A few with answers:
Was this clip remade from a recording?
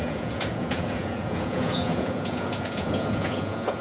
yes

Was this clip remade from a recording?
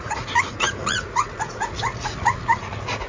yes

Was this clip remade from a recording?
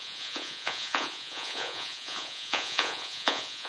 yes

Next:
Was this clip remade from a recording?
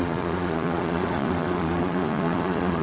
yes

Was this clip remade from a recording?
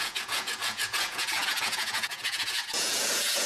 yes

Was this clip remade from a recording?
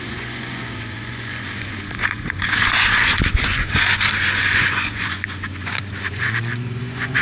yes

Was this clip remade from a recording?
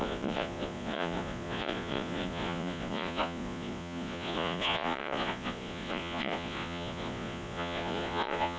yes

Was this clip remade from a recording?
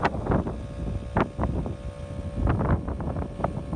no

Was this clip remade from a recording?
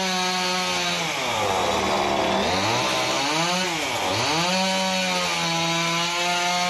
no